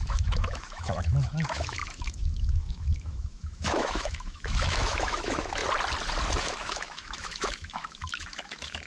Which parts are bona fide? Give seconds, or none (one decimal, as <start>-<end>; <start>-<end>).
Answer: 5.6-6.4